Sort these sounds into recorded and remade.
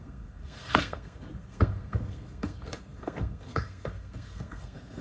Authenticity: remade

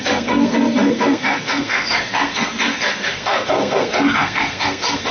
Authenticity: remade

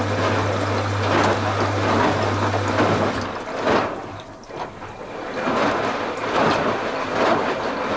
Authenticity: recorded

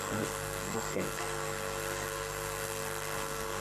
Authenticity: remade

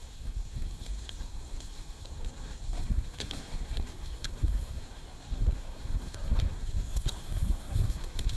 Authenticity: remade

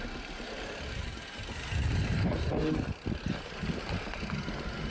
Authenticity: recorded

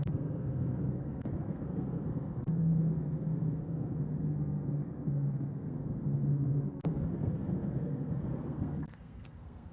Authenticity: remade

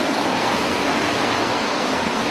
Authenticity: remade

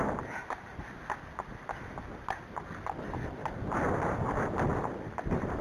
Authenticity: recorded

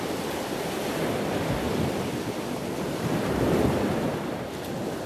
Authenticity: recorded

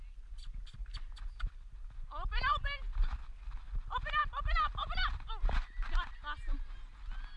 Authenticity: recorded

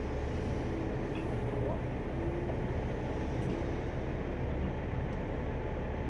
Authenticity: recorded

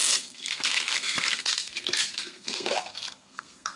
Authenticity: remade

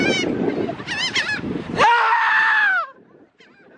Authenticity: recorded